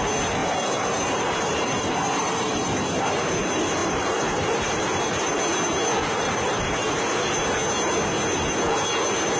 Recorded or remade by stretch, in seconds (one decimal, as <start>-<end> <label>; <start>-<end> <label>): 0.0-0.4 recorded; 0.4-3.3 remade; 3.3-3.8 recorded; 3.8-5.4 remade; 5.4-6.0 recorded; 6.0-7.3 remade; 7.3-9.4 recorded